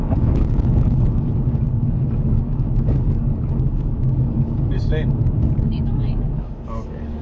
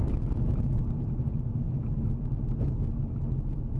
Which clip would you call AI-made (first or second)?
first